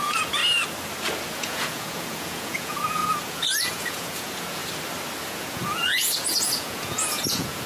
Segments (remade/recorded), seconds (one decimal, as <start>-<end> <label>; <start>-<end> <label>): 0.0-0.4 remade; 0.4-1.3 recorded; 1.3-4.6 remade; 4.6-5.2 recorded; 5.2-7.7 remade